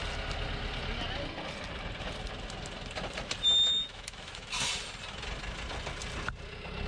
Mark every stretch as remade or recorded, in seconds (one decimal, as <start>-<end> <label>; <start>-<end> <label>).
0.0-3.7 recorded; 3.7-4.5 remade; 4.5-6.9 recorded